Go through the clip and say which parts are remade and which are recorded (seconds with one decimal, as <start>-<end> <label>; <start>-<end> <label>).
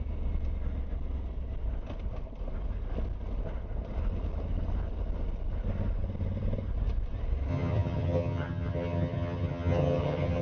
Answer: 0.0-7.5 recorded; 7.5-10.4 remade